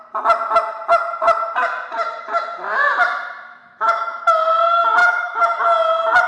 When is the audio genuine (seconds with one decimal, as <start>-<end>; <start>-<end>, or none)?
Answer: 0.0-3.6; 4.2-5.0; 5.6-6.3